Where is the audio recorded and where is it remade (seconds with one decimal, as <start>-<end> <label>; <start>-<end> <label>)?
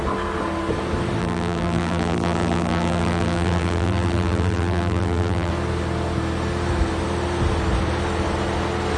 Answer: 0.0-1.2 recorded; 1.2-5.5 remade; 5.5-9.0 recorded